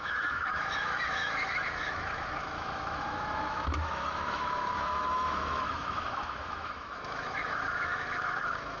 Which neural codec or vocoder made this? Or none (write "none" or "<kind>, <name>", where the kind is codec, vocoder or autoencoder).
autoencoder, DAC-VAE